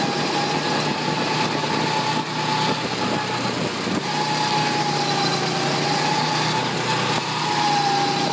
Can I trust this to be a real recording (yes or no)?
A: yes